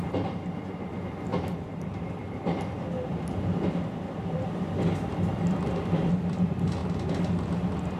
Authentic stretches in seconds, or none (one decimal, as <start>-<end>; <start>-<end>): 0.0-1.3; 6.1-8.0